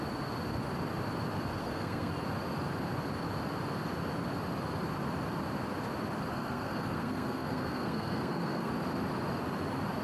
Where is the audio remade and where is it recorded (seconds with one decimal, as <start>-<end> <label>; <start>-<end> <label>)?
0.0-1.6 recorded; 1.6-2.1 remade; 2.1-6.3 recorded; 6.3-8.7 remade; 8.7-10.0 recorded